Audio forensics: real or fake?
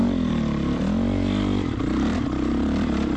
fake